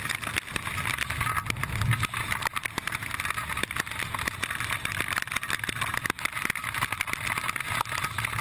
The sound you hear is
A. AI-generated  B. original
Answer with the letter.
B